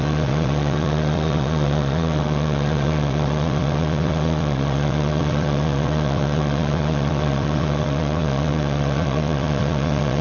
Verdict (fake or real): fake